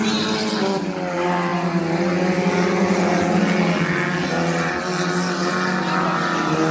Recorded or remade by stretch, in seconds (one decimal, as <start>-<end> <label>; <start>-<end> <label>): 0.0-6.7 recorded